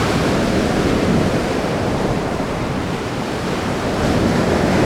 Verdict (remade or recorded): remade